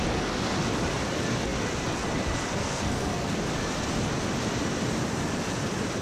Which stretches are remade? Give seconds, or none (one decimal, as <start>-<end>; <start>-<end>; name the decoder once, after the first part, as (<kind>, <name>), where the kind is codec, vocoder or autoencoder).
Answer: 2.6-3.4 (codec, SNAC)